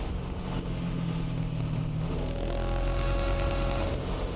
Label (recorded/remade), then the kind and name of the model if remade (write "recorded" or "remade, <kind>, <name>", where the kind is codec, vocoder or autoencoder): remade, autoencoder, DAC-VAE